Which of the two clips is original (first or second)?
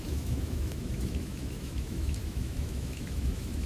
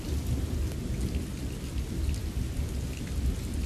second